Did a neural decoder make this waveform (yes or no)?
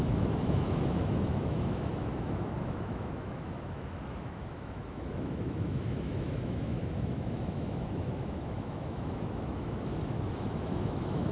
yes